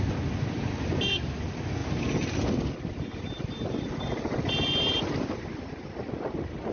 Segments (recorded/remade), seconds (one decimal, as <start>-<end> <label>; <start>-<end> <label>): 0.0-6.7 recorded